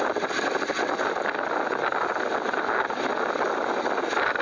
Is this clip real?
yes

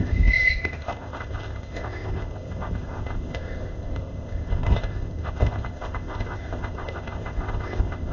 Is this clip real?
no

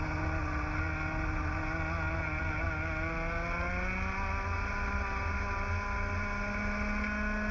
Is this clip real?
yes